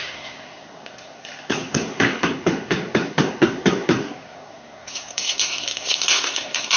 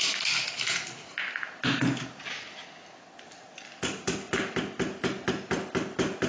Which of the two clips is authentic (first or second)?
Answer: second